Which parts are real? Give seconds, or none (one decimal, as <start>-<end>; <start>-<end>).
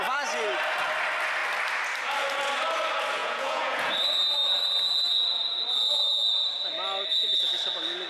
0.0-3.2; 3.9-8.1